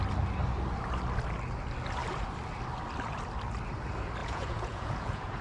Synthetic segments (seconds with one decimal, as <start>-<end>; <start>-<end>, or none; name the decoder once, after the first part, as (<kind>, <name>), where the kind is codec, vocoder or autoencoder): 4.2-5.4 (vocoder, Vocos)